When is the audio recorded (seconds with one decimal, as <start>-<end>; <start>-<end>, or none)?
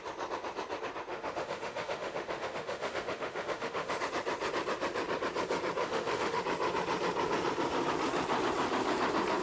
0.0-1.1; 4.0-5.8; 6.4-9.4